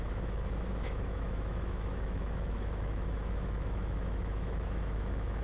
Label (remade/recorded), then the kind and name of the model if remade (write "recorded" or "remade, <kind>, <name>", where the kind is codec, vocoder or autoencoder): remade, autoencoder, DAC-VAE